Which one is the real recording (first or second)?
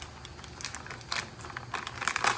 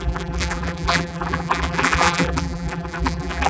first